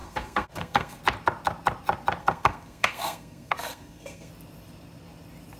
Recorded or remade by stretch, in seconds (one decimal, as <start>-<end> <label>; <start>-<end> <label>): 0.0-1.0 remade; 1.0-2.2 recorded; 2.2-4.3 remade; 4.3-5.6 recorded